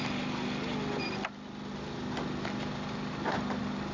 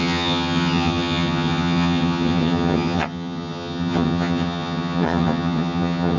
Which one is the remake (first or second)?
second